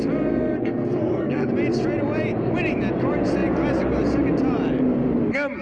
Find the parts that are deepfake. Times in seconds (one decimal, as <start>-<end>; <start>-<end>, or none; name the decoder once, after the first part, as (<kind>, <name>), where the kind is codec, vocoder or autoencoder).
0.6-1.5 (codec, SNAC)